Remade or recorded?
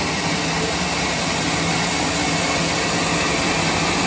recorded